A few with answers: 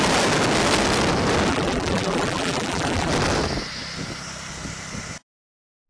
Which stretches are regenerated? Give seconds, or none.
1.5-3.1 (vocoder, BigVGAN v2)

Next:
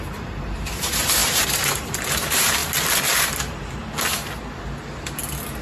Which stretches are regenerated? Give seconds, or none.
0.0-2.6 (vocoder, BigVGAN v2); 3.4-3.8

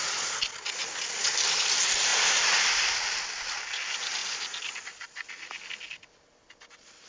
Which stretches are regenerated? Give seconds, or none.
2.1-2.7 (vocoder, BigVGAN v2); 4.2-5.6

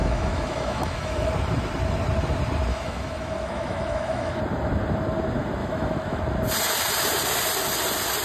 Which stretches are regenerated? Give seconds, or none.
0.0-1.3 (autoencoder, DAC-VAE); 2.7-4.4; 5.6-6.2

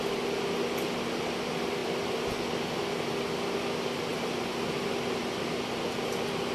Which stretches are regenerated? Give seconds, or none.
none

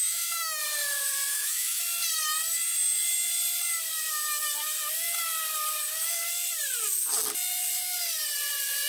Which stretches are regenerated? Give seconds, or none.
0.0-0.6 (autoencoder, DAC-VAE); 1.3-1.8